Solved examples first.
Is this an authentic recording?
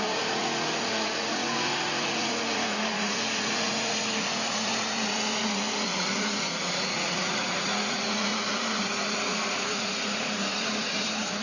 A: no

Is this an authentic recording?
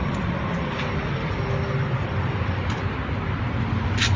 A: yes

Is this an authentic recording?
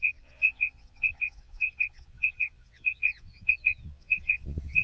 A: no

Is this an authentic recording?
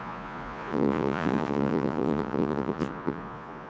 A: no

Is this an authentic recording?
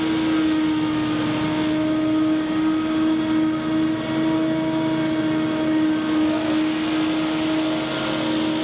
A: yes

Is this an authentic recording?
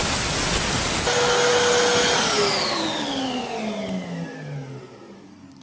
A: yes